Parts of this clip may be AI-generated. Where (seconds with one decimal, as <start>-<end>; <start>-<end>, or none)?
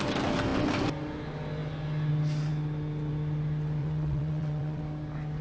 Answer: 3.8-4.8